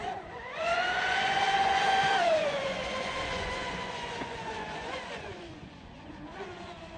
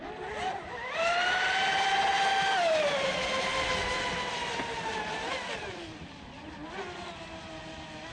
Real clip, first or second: second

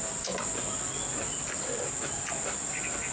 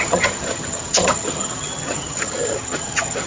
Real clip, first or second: first